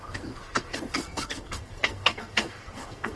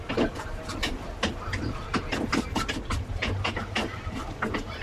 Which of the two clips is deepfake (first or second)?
first